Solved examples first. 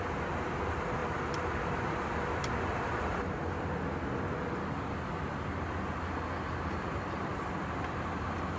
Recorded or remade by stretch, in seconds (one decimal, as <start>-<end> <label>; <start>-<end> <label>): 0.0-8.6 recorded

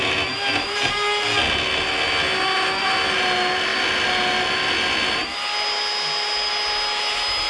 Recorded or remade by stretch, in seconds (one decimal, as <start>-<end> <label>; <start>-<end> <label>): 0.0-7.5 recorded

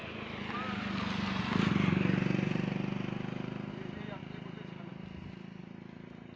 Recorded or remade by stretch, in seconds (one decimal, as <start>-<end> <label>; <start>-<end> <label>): 0.0-4.2 recorded; 4.2-4.9 remade; 4.9-5.6 recorded; 5.6-6.4 remade